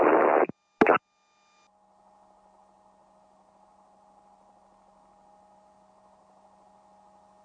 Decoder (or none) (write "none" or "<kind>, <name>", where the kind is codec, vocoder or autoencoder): none